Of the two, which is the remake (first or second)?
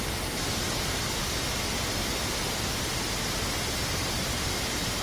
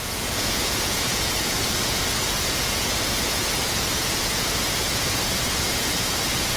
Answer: second